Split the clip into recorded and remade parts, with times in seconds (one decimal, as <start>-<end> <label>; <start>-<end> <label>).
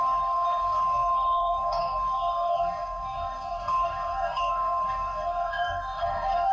0.0-6.5 remade